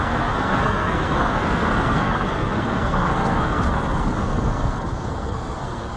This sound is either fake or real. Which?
fake